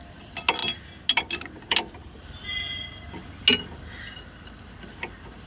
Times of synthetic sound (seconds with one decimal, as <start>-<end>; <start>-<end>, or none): none